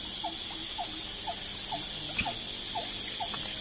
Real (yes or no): yes